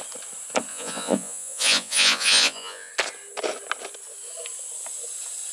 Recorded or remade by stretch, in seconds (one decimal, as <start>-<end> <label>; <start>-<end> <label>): 0.0-0.7 recorded; 0.7-2.9 remade; 2.9-5.5 recorded